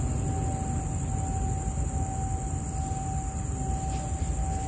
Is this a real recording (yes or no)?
yes